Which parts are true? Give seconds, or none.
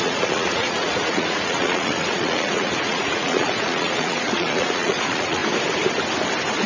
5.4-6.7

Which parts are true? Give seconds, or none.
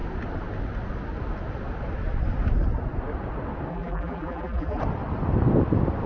0.0-3.7; 4.8-6.1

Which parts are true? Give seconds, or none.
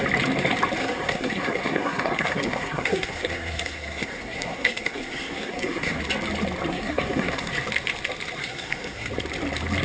0.0-0.8; 6.0-6.7; 7.5-8.4; 9.1-9.8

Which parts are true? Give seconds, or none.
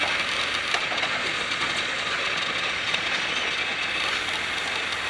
0.0-0.8; 3.9-5.1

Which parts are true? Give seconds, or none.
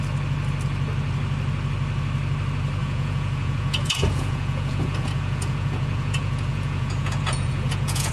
0.0-2.8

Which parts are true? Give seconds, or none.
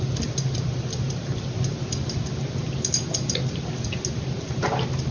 0.0-5.1